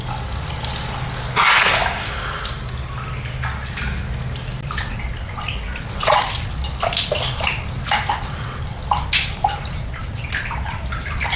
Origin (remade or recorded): recorded